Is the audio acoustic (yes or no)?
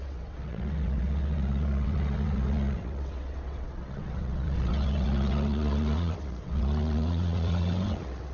no